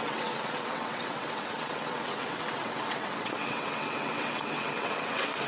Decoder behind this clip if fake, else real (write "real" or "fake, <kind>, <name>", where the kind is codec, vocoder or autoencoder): fake, vocoder, WaveNeXt